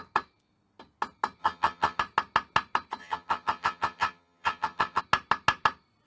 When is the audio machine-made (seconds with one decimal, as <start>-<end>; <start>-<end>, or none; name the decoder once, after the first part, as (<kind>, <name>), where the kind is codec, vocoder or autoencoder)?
1.4-2.0 (vocoder, HiFi-GAN); 3.0-5.0